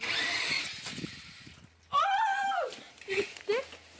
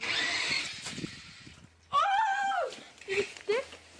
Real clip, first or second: second